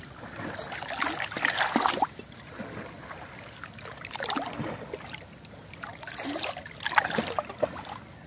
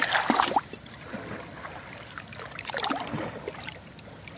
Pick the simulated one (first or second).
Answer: second